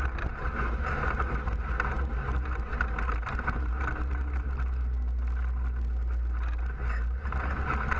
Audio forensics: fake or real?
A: real